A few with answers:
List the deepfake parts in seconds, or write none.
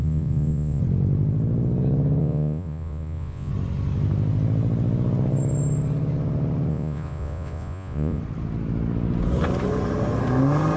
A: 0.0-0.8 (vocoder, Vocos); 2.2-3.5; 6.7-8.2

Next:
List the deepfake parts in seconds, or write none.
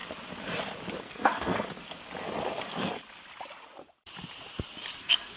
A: 1.0-1.8 (codec, SNAC); 5.0-5.4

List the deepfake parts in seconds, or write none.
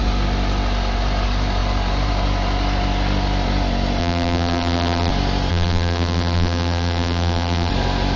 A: 4.0-5.1 (vocoder, BigVGAN v2); 5.5-7.7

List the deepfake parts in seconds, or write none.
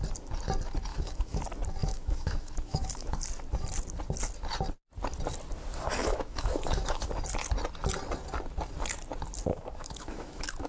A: 0.9-1.4 (autoencoder, DAC-VAE); 1.8-3.2; 6.0-7.1; 9.5-10.7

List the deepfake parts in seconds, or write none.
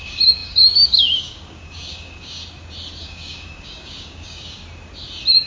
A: 0.0-2.4 (codec, DAC); 3.0-4.6